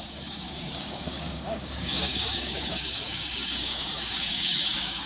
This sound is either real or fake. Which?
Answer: fake